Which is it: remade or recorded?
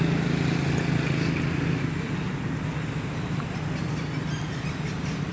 recorded